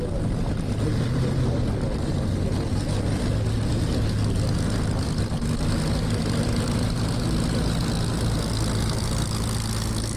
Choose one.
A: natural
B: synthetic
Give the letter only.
A